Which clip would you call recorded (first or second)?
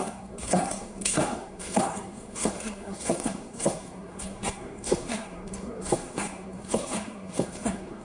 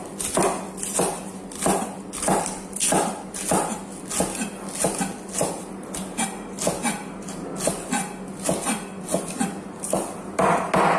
second